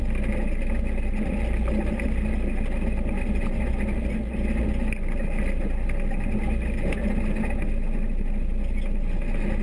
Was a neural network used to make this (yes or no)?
no